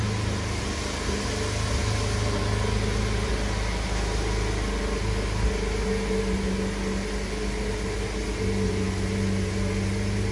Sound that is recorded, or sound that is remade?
recorded